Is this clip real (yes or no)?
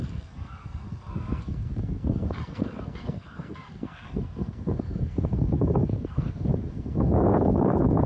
no